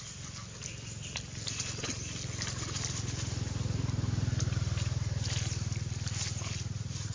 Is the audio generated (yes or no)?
no